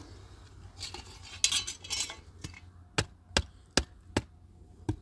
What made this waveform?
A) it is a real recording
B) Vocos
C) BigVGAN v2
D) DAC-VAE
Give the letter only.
A